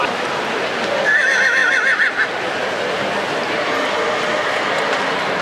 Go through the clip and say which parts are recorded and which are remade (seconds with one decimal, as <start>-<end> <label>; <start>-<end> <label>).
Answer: 0.0-1.0 remade; 1.0-1.6 recorded; 1.6-2.9 remade; 2.9-5.4 recorded